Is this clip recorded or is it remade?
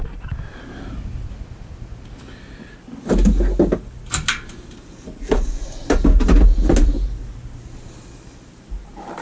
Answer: recorded